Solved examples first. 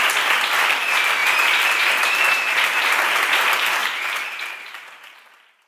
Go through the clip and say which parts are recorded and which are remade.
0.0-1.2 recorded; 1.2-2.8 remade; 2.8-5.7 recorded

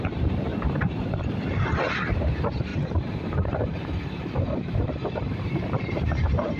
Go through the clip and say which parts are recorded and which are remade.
0.0-6.6 remade

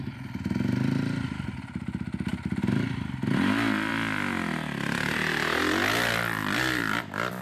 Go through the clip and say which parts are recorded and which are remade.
0.0-2.3 recorded; 2.3-3.9 remade; 3.9-6.4 recorded; 6.4-7.4 remade

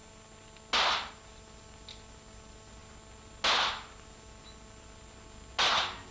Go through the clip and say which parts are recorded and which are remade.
0.0-6.1 recorded

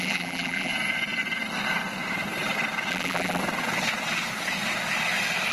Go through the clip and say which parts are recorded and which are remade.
0.0-0.7 remade; 0.7-2.9 recorded; 2.9-3.4 remade; 3.4-5.5 recorded

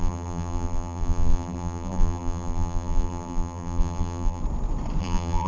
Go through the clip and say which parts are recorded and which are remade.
0.0-4.4 remade; 4.4-5.0 recorded; 5.0-5.5 remade